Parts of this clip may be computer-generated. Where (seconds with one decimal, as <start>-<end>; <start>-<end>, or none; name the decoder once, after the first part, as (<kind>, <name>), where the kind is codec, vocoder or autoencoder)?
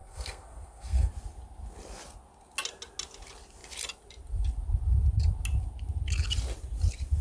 0.0-1.1 (codec, SNAC)